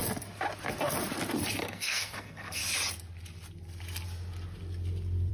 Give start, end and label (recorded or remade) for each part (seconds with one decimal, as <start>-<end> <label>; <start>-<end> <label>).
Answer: 0.0-1.6 recorded; 1.6-2.6 remade; 2.6-5.3 recorded